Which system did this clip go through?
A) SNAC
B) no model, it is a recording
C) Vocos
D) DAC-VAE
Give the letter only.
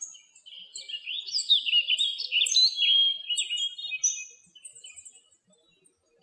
B